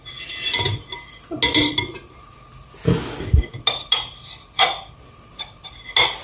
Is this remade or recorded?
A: recorded